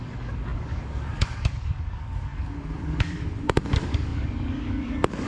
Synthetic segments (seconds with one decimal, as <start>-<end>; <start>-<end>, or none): 0.0-5.3